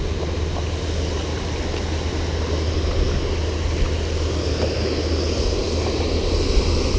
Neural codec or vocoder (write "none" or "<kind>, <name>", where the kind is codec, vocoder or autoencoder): none